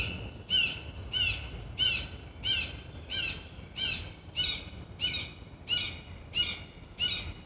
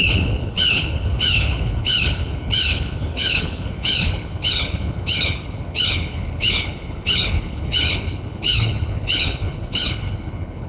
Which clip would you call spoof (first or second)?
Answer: second